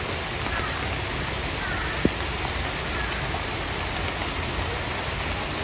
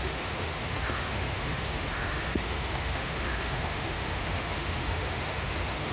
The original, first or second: first